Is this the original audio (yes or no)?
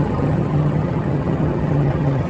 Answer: no